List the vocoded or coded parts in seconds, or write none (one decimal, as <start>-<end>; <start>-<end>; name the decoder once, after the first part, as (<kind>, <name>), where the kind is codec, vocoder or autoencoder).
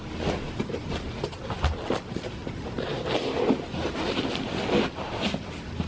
none